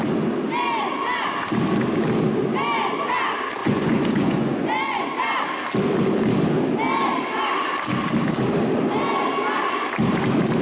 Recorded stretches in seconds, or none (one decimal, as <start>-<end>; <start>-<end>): 0.0-3.6; 5.1-10.6